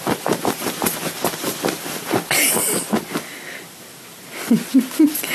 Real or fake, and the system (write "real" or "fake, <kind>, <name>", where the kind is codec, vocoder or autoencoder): fake, vocoder, BigVGAN v2